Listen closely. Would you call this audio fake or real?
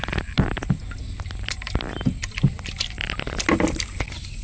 real